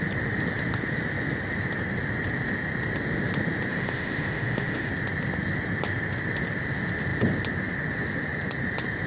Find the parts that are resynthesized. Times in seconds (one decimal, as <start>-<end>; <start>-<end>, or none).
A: 3.7-4.9